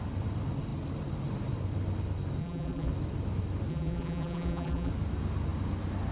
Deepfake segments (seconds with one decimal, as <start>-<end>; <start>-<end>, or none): 2.4-2.9; 3.7-4.9